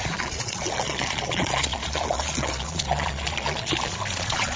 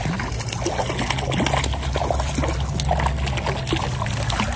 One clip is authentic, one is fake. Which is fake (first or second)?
first